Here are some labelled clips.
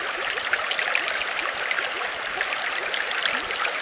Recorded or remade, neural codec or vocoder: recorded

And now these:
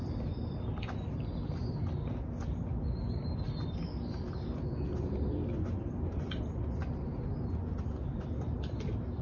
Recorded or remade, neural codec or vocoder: recorded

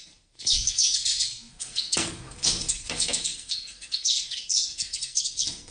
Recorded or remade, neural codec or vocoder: remade, codec, SNAC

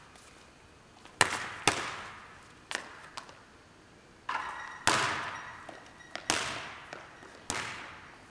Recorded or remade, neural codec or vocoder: recorded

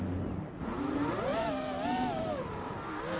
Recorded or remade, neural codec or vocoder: recorded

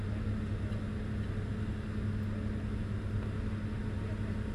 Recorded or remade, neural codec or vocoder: recorded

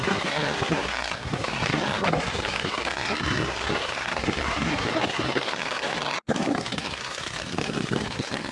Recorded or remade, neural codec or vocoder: remade, codec, SNAC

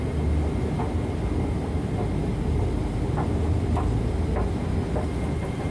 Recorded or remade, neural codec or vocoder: recorded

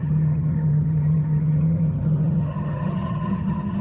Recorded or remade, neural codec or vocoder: remade, vocoder, HiFi-GAN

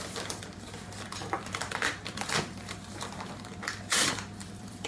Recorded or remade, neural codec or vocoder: remade, vocoder, BigVGAN v2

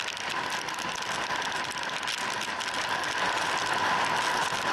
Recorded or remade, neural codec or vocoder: recorded